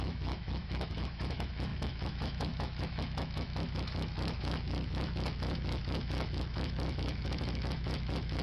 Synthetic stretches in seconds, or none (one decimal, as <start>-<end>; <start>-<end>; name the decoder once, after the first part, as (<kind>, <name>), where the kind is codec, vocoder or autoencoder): 0.0-8.4 (autoencoder, DAC-VAE)